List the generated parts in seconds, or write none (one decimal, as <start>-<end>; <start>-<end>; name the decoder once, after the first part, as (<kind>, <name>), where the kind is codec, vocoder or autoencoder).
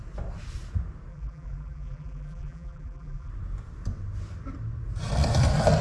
1.1-3.3 (vocoder, BigVGAN v2)